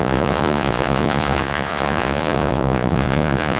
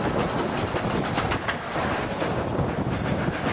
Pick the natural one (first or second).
second